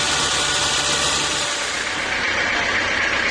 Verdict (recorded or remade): recorded